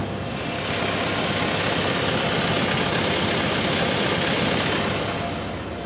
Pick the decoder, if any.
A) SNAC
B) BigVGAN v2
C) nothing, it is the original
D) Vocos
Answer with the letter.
C